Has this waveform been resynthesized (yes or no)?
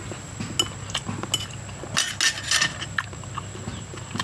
no